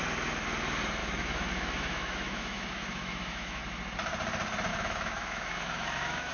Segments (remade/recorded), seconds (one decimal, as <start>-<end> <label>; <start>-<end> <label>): 0.0-1.0 recorded; 1.0-3.6 remade; 3.6-4.7 recorded; 4.7-6.3 remade